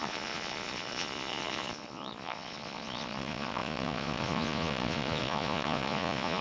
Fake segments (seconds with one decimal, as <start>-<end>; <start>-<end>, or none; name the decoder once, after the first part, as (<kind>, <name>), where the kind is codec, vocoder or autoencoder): 0.0-6.4 (vocoder, Vocos)